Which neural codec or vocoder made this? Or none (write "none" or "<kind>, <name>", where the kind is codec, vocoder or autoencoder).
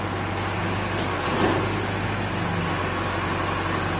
none